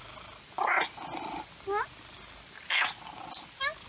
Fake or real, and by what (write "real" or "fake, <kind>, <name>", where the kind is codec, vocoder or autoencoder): real